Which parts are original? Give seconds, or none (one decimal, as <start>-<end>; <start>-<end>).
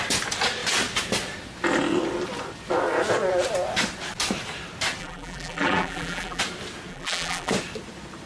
0.0-5.0; 6.4-6.9; 7.5-8.3